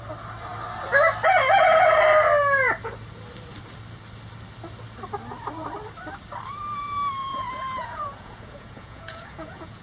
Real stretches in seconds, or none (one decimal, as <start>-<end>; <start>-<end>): 0.0-7.2